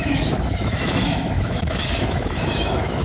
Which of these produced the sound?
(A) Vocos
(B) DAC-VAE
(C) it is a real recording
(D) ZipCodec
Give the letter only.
B